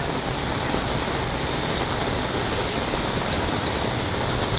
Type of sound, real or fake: real